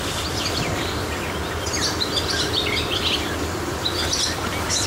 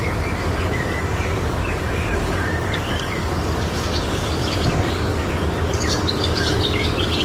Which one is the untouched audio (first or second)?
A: first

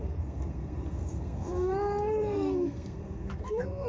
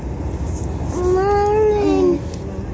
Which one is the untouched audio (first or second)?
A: second